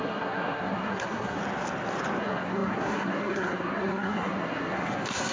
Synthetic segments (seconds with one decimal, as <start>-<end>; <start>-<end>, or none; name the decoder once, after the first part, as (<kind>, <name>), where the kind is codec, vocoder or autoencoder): 0.0-1.4 (codec, SNAC); 2.2-5.3